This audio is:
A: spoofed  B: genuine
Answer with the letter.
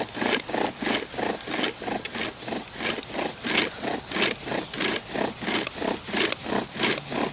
B